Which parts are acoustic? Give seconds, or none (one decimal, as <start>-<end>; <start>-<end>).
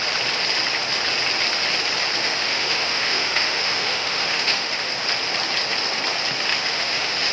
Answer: 0.0-2.2; 4.9-6.5